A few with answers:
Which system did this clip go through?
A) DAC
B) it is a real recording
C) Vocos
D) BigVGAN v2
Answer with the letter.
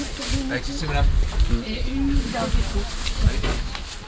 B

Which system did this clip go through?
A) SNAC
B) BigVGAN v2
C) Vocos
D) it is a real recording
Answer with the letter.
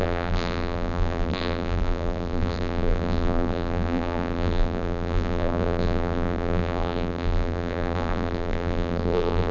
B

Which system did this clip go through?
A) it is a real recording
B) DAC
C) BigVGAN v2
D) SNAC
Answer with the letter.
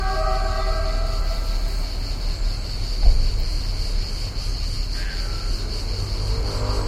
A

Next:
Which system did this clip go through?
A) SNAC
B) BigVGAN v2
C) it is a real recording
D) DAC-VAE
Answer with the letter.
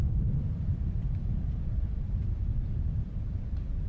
B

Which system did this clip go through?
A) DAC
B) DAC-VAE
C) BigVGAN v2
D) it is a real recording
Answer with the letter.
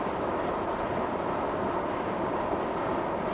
D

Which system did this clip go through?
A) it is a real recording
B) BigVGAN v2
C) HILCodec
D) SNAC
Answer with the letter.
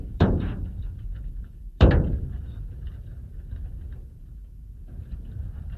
B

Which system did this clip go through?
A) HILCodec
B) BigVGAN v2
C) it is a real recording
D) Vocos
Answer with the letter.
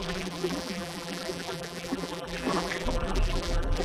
B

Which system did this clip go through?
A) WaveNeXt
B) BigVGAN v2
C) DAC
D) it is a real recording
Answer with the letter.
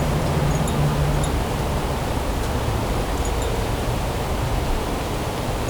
D